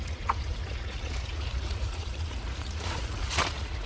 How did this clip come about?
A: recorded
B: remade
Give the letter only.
B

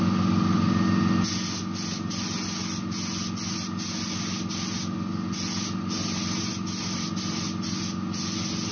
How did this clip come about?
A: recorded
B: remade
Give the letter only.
A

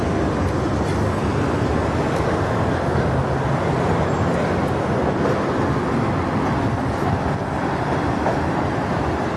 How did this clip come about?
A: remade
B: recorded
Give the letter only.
B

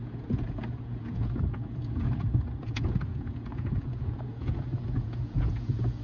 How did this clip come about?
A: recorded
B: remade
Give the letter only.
B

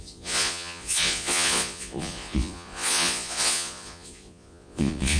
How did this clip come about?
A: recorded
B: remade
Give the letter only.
B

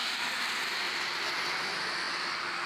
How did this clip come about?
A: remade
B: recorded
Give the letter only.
B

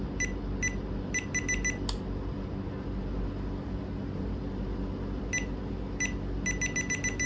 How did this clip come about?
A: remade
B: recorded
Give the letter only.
B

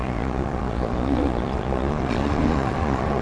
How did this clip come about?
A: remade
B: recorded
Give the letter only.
A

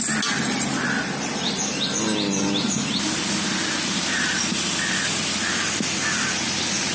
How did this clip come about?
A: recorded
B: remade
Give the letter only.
A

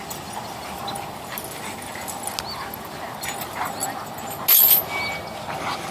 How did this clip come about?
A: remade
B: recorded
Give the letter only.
B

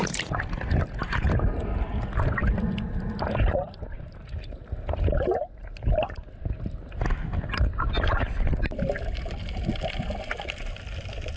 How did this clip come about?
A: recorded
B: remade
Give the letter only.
A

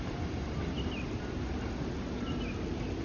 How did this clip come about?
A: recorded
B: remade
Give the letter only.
A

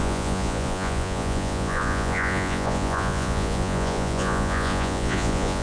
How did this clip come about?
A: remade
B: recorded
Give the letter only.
A